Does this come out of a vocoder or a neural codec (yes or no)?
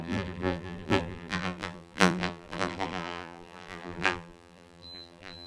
yes